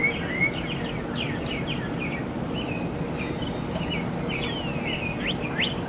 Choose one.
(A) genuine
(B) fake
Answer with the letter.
A